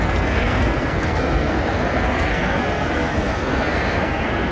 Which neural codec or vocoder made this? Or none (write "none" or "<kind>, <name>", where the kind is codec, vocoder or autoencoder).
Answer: codec, SNAC